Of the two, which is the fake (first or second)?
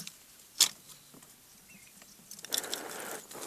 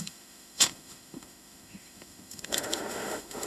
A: second